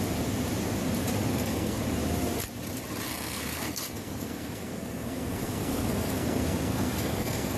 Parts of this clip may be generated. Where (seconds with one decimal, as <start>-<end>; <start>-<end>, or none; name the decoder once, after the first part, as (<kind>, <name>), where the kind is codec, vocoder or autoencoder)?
1.3-1.8 (codec, SNAC); 3.1-7.6